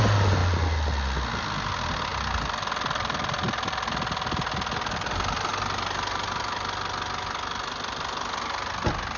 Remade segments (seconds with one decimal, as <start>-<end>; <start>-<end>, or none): none

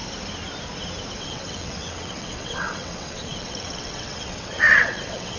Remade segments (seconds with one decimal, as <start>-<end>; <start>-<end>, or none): 1.2-5.4

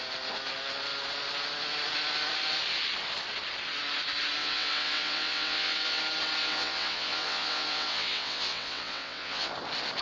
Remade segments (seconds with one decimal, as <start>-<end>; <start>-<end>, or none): 4.4-6.0; 6.4-9.5

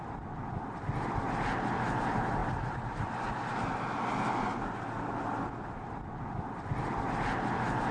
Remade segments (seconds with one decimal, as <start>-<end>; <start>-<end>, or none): none

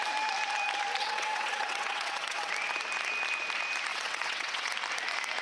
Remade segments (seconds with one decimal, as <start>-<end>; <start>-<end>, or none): 1.0-2.5; 3.9-4.7